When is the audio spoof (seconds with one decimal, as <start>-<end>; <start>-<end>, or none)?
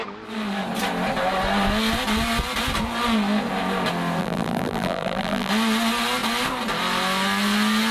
4.2-5.5